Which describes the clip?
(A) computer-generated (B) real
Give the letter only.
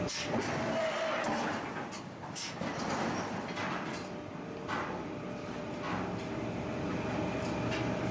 B